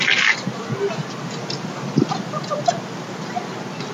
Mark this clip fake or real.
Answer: real